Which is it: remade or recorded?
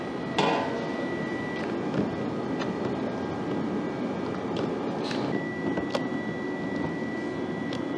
recorded